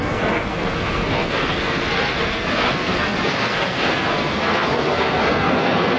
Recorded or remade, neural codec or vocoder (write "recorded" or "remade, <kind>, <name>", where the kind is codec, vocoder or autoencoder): remade, codec, SNAC